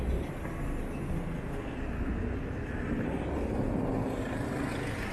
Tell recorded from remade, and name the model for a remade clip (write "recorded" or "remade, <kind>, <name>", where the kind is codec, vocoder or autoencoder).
recorded